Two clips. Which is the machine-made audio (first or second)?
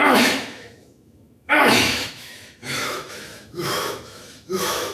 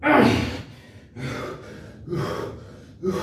first